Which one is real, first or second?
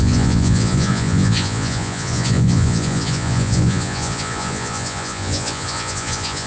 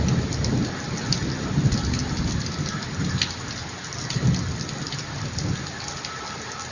second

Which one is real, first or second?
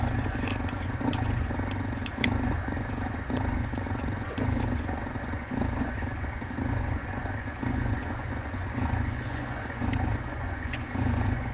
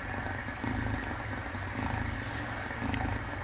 second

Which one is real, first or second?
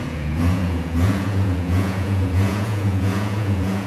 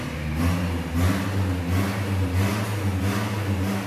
second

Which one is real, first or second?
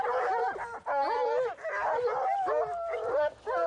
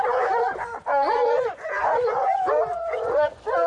first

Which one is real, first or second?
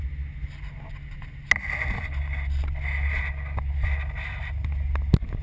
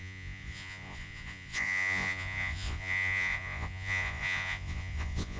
first